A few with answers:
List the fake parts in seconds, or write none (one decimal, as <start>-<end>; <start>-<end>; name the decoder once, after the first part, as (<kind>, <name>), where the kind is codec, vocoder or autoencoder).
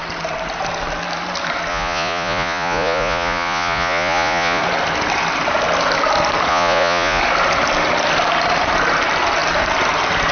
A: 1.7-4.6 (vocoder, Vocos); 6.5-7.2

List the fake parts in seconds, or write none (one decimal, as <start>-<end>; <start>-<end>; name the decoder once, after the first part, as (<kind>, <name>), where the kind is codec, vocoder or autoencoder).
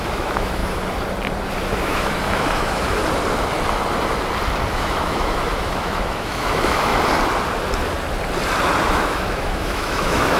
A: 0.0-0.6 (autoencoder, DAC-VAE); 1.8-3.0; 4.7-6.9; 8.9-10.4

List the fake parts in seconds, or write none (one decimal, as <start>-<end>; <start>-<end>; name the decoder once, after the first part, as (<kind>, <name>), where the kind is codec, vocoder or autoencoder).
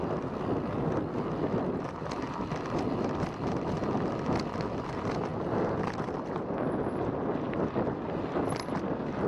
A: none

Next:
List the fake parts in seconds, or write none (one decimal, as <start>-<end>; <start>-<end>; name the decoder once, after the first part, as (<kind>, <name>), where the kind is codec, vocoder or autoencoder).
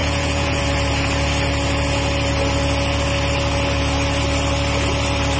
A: 0.0-0.6 (vocoder, Vocos)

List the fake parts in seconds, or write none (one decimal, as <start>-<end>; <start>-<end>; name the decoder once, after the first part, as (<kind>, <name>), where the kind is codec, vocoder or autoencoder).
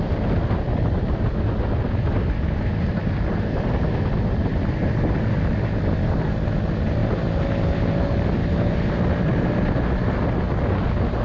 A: none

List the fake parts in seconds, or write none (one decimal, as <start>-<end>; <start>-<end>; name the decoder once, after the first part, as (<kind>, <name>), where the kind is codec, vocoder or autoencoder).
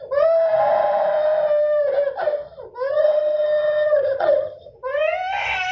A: 2.9-4.7 (vocoder, HiFi-GAN)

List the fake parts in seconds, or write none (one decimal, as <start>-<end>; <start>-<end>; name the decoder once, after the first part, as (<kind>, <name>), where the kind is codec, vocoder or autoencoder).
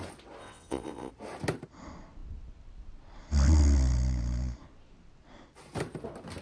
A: 0.4-1.1 (vocoder, WaveNeXt)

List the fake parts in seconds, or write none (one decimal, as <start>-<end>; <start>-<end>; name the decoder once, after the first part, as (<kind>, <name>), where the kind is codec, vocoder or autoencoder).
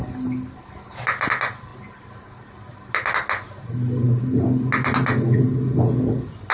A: none